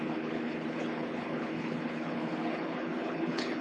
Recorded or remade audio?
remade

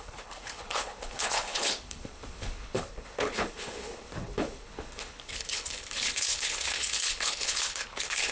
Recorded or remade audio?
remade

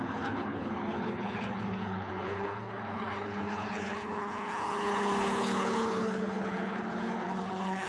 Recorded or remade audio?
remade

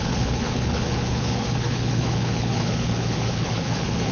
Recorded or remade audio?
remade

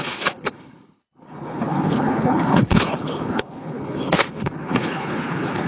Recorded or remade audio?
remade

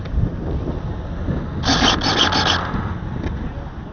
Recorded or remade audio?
recorded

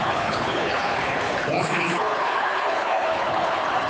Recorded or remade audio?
remade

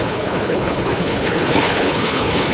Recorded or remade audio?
remade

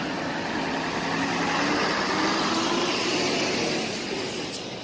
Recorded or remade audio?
recorded